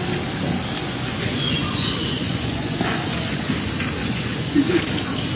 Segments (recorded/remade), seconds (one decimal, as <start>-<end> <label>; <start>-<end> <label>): 0.0-0.8 recorded; 0.8-3.5 remade; 3.5-4.0 recorded; 4.0-4.8 remade; 4.8-5.4 recorded